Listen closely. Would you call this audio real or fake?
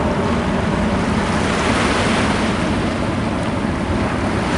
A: real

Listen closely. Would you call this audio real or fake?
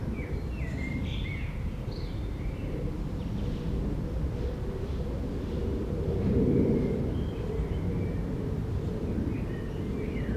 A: real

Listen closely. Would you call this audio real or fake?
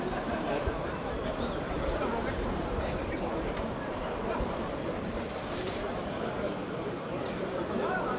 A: fake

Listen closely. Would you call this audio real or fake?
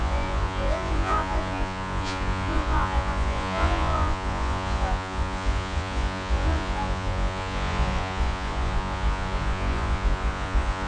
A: fake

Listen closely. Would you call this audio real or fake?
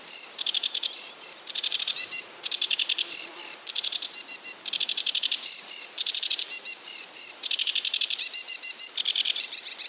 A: fake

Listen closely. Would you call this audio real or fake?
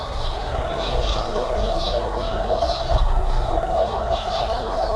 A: fake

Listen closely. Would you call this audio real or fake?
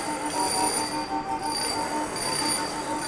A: real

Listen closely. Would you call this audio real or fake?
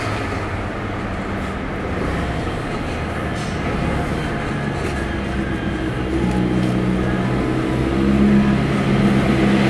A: real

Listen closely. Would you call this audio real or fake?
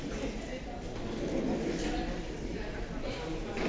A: real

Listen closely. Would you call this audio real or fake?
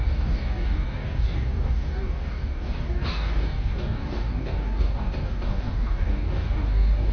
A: fake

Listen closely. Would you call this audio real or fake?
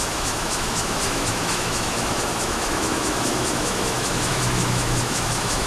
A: fake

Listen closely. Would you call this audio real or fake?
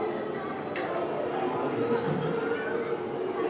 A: real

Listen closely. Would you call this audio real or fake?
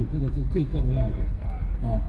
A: fake